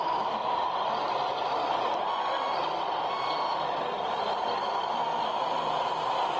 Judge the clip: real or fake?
real